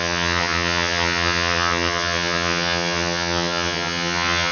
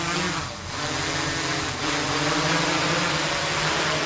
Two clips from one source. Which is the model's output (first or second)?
first